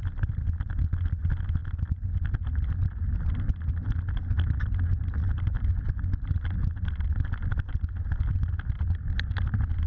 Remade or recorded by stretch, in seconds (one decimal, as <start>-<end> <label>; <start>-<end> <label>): 0.0-9.9 recorded